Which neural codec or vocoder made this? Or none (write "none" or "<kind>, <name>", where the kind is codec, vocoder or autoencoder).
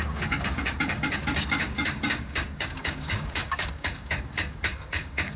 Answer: codec, DAC